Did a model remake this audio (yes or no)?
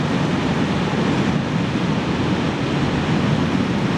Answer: no